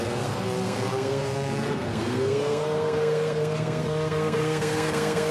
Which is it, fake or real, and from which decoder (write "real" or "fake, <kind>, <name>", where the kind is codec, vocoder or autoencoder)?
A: fake, codec, SNAC